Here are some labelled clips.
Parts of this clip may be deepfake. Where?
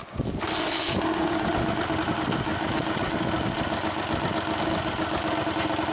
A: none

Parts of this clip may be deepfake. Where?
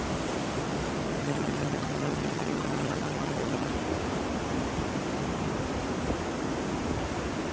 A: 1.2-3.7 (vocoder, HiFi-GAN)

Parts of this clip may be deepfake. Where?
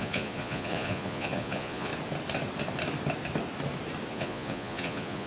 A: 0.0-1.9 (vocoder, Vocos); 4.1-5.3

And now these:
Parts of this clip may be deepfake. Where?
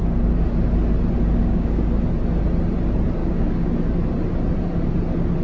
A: 1.4-1.9 (codec, DAC); 3.2-3.7